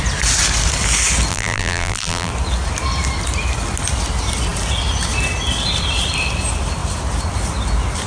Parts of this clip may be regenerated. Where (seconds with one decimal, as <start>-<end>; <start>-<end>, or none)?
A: 1.3-2.3

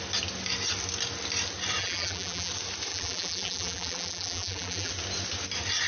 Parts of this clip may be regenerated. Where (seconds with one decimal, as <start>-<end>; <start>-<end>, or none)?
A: 1.8-2.5; 2.9-4.9

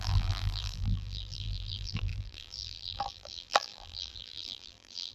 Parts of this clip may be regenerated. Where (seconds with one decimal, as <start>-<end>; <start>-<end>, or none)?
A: 0.0-5.1

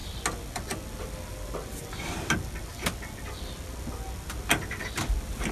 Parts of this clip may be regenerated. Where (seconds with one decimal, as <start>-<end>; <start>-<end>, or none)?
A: none

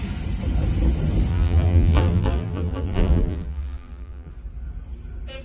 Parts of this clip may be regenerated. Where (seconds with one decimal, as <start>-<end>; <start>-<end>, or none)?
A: 1.3-4.3

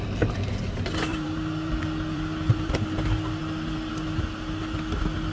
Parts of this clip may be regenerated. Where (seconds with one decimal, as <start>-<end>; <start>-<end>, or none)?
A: 1.1-2.7